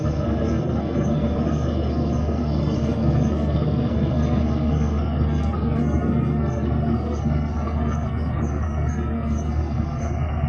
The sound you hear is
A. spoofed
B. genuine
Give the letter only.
A